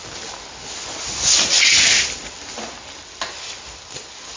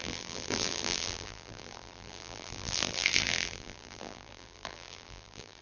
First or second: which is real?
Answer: first